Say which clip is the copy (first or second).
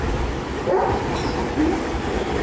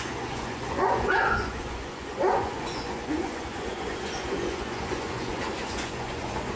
second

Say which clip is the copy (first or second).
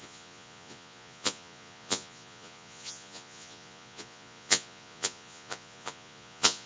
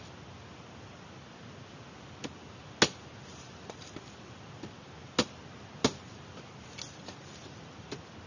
first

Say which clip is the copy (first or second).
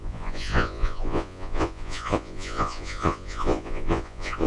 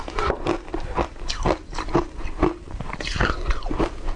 first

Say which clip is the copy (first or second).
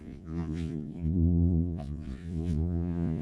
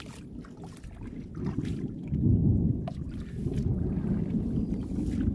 first